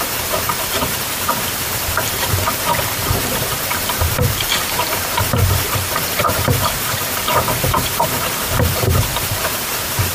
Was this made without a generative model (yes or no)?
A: no